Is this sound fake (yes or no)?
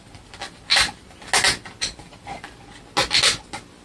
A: no